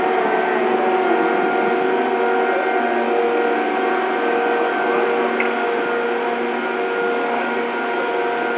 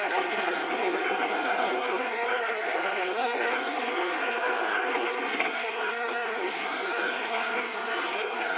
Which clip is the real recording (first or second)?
first